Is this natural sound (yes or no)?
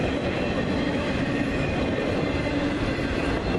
no